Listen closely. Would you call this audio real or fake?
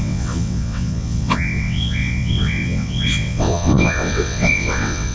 fake